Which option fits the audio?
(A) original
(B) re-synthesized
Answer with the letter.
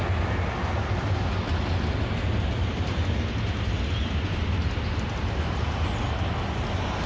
A